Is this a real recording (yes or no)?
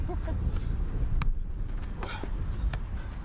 yes